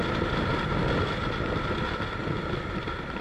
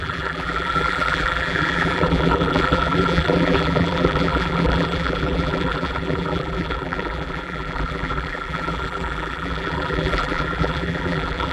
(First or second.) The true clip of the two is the first